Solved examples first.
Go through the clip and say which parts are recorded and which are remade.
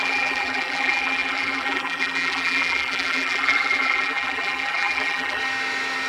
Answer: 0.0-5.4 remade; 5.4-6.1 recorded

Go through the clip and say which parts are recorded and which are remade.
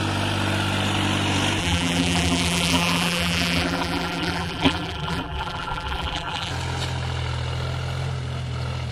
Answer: 0.0-1.6 recorded; 1.6-6.5 remade; 6.5-8.9 recorded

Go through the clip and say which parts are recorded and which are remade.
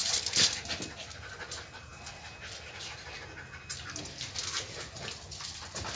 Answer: 0.0-6.0 recorded